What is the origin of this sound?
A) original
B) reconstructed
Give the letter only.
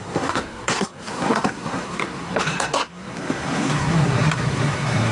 B